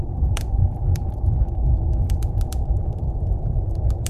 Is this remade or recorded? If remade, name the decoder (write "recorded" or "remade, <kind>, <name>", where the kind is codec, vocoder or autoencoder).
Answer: remade, vocoder, BigVGAN v2